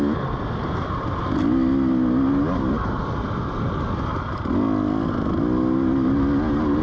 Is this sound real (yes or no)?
yes